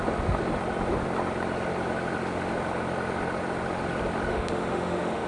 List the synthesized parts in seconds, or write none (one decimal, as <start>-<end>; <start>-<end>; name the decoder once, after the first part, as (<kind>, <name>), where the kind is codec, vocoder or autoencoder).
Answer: 4.3-5.3 (autoencoder, DAC-VAE)